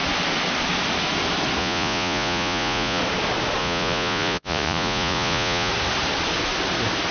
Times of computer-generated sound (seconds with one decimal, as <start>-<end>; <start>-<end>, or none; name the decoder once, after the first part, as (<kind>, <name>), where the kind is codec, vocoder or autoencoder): 1.6-3.0 (vocoder, Vocos); 3.6-5.7